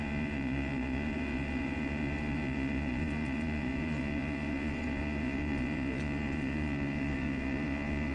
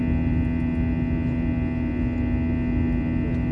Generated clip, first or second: first